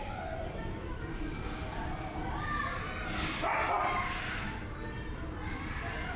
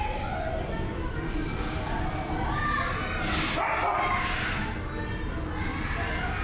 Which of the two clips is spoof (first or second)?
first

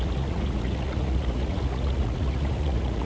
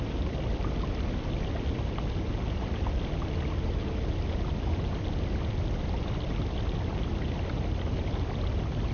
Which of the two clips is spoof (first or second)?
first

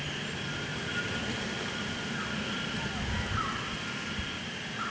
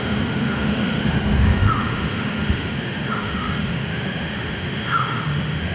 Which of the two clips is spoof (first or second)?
second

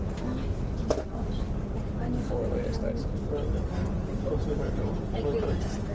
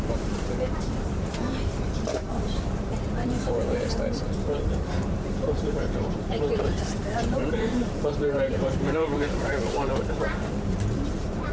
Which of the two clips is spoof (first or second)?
second